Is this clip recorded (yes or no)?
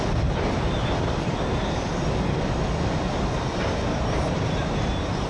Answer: yes